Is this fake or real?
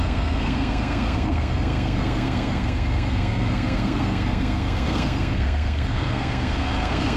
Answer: fake